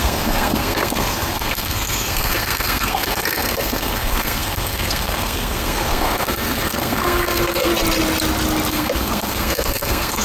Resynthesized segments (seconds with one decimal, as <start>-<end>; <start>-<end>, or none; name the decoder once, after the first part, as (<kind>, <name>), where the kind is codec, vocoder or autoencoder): 0.0-7.7 (codec, SNAC); 8.7-10.2